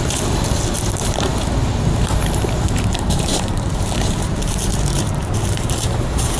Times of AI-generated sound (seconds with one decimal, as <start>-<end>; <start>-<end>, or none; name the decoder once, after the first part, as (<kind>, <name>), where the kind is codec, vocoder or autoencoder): 0.0-6.4 (vocoder, BigVGAN v2)